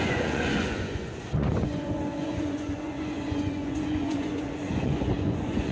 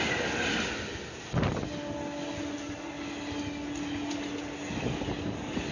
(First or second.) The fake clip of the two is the first